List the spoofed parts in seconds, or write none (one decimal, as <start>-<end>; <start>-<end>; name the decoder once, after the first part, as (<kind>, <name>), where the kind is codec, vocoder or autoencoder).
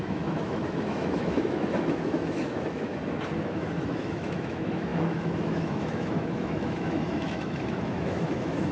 0.0-2.9 (autoencoder, DAC-VAE); 3.4-8.7